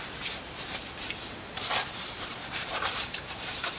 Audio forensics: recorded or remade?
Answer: remade